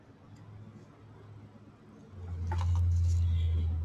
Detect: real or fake real